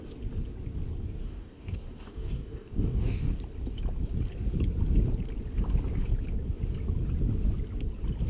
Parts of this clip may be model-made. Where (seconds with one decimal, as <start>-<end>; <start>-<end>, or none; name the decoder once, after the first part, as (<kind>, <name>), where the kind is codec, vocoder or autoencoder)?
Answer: 1.2-3.4 (codec, DAC)